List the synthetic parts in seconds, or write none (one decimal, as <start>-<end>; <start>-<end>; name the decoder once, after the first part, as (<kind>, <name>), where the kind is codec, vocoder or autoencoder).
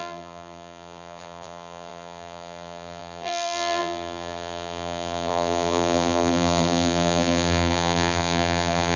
0.0-9.0 (vocoder, BigVGAN v2)